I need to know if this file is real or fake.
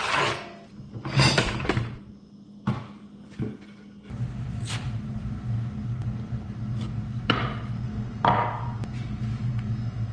real